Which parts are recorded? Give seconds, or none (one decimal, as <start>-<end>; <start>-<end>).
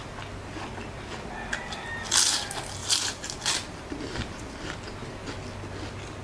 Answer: 0.0-2.8; 4.5-6.2